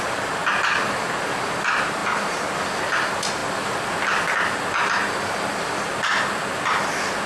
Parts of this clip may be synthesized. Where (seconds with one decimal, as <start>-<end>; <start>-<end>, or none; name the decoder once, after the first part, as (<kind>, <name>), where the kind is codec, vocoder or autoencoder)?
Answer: none